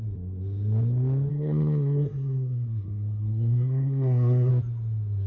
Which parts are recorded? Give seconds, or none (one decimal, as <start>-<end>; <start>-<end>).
0.0-1.3; 4.5-5.3